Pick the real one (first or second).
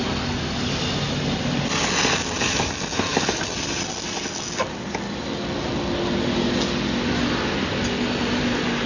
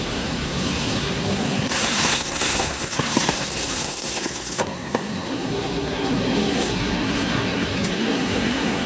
first